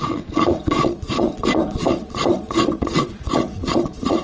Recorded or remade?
remade